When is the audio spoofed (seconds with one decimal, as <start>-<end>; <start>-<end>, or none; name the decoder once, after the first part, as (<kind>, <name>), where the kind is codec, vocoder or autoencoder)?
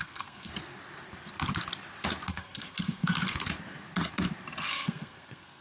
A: 0.0-0.5 (codec, SNAC); 2.3-3.4; 4.7-5.6